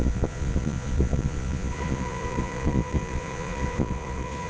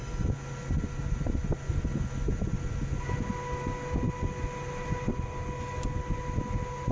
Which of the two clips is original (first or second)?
second